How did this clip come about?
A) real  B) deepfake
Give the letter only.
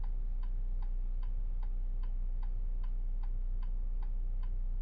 A